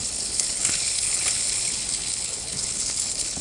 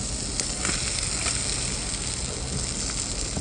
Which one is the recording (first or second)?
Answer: second